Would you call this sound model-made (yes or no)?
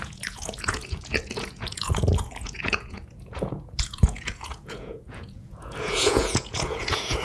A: yes